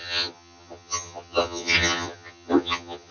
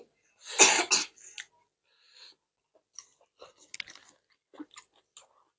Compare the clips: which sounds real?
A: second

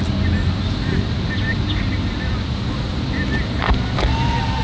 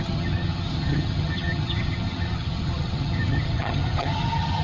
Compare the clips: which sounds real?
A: first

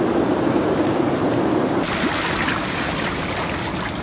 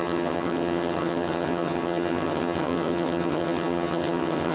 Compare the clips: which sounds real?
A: first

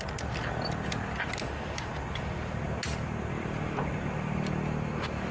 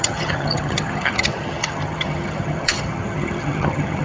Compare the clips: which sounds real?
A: first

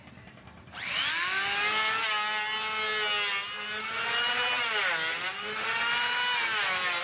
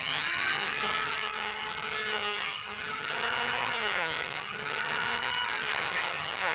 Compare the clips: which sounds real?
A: first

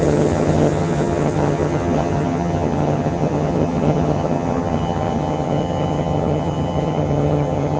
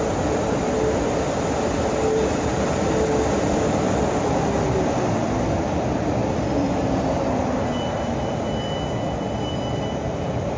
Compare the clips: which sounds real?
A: second